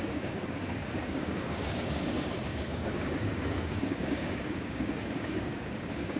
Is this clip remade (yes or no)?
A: yes